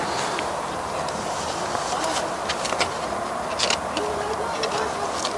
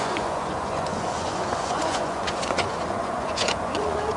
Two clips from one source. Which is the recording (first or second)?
first